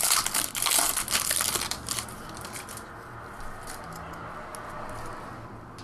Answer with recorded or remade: recorded